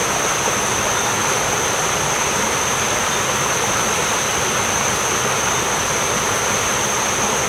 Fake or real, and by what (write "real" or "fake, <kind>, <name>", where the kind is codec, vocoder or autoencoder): real